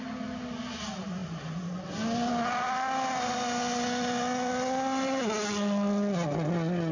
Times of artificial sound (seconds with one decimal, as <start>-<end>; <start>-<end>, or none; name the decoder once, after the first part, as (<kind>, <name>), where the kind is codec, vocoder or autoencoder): none